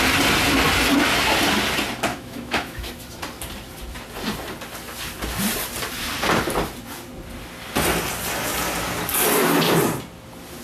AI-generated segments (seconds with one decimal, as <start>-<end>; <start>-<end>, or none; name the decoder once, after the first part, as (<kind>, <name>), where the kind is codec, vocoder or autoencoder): 2.1-2.9 (autoencoder, DAC-VAE)